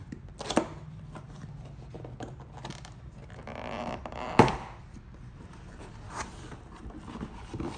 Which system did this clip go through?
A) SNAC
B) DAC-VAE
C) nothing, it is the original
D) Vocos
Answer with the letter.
C